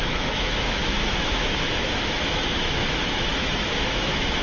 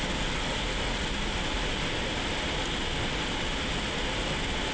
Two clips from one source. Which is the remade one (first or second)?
first